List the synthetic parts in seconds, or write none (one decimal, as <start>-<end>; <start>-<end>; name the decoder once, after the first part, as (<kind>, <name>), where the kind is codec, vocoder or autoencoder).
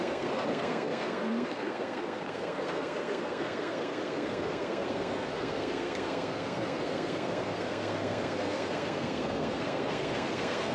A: 0.0-10.7 (codec, SNAC)